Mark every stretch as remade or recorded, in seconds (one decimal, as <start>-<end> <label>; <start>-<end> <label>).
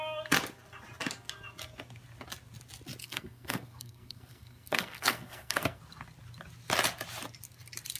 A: 0.0-3.0 recorded; 3.0-5.8 remade; 5.8-8.0 recorded